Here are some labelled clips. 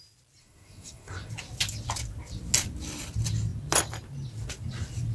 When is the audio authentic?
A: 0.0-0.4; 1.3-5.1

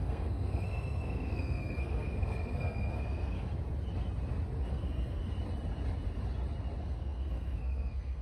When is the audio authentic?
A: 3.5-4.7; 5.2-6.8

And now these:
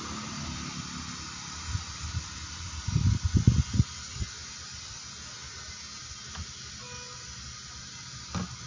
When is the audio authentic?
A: 0.0-8.7

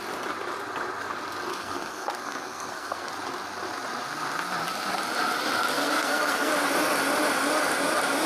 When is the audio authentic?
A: 0.0-1.5; 3.1-5.7; 6.5-8.3

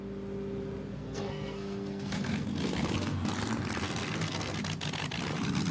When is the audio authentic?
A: 0.0-0.9; 3.3-3.8; 4.6-5.7

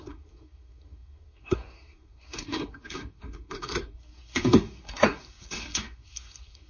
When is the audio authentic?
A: none

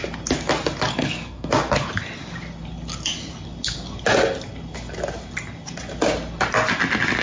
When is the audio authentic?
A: 0.0-0.9; 1.5-7.2